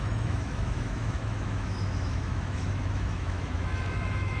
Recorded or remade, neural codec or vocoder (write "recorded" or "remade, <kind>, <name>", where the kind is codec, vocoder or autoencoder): remade, autoencoder, DAC-VAE